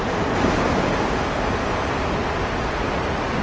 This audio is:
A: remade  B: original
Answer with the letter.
B